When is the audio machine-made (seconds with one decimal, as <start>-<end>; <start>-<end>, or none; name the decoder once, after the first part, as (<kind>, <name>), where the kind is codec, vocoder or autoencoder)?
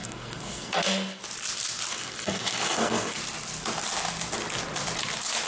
0.0-1.2 (codec, SNAC); 1.9-3.2